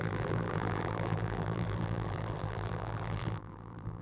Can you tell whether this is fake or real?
fake